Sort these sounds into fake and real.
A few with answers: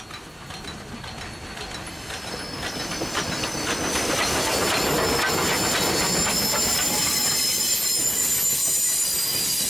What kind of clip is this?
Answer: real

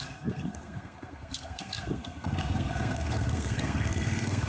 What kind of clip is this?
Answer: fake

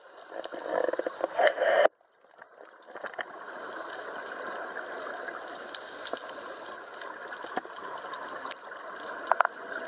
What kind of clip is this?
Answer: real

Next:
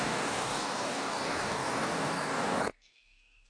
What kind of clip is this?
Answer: fake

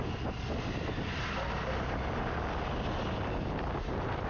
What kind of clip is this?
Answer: real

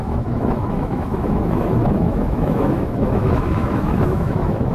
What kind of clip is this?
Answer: fake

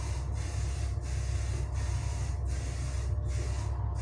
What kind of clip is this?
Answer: real